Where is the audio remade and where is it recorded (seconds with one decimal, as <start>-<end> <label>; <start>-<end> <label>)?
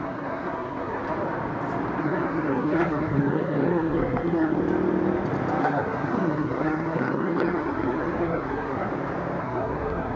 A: 0.0-1.0 remade; 1.0-2.0 recorded; 2.0-4.6 remade; 4.6-5.6 recorded; 5.6-8.9 remade; 8.9-9.4 recorded; 9.4-10.2 remade